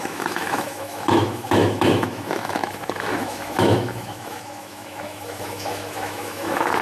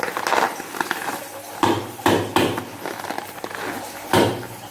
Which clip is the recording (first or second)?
second